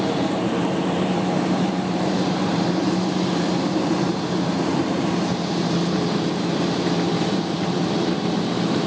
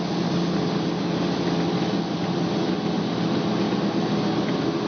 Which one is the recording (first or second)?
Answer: second